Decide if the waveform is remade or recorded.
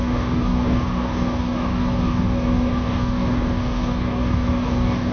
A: remade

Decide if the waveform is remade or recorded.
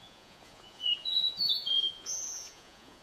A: remade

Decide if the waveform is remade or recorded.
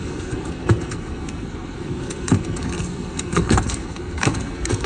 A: remade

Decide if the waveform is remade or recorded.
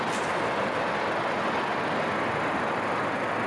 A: recorded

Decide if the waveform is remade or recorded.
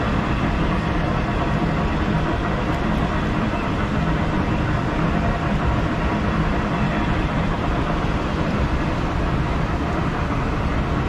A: remade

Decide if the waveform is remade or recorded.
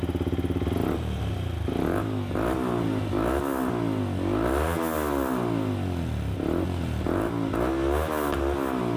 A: recorded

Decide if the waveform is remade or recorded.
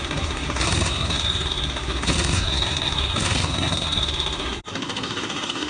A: remade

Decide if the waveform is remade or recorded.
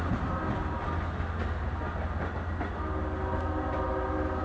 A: recorded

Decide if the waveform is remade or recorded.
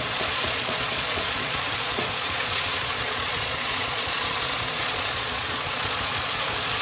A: remade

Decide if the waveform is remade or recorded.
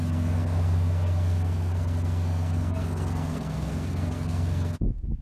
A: remade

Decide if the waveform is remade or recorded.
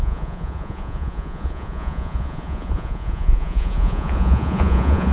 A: remade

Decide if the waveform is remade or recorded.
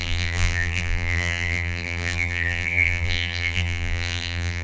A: remade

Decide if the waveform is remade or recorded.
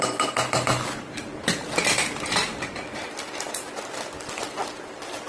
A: remade